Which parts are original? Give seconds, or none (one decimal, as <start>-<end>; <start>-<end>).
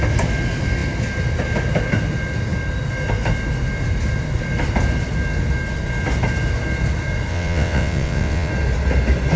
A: 0.0-7.3; 8.5-9.4